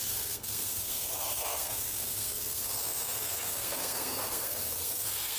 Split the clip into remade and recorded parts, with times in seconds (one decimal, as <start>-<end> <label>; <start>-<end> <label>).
0.0-5.4 remade